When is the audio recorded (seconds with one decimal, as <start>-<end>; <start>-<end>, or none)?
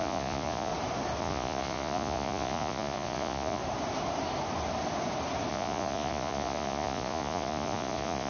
0.7-1.2; 3.6-5.5